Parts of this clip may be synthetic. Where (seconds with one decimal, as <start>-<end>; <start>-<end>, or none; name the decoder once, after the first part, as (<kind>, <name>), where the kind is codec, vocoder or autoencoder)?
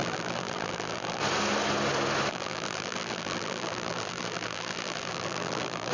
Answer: 0.0-1.2 (vocoder, BigVGAN v2); 2.3-5.9